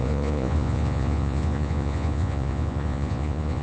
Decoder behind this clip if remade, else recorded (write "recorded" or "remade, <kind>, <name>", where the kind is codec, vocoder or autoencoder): remade, vocoder, Vocos